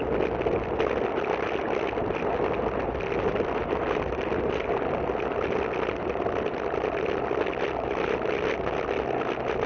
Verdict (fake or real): real